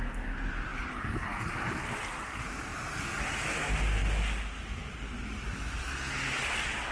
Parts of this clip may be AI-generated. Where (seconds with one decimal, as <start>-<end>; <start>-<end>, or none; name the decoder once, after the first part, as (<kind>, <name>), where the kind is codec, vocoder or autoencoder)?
none